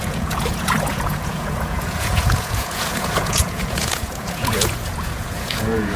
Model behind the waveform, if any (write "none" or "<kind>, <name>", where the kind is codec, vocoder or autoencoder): vocoder, Vocos